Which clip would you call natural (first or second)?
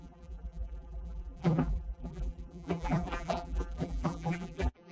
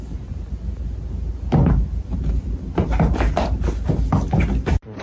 second